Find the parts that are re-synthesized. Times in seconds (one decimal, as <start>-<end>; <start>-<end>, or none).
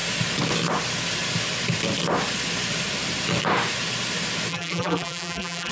4.5-5.7